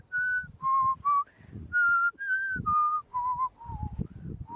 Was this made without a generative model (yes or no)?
yes